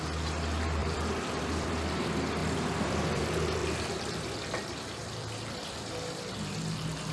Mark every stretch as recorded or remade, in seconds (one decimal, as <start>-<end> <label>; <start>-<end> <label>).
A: 0.0-0.8 recorded; 0.8-1.7 remade; 1.7-2.4 recorded; 2.4-3.2 remade; 3.2-3.6 recorded; 3.6-6.4 remade; 6.4-7.1 recorded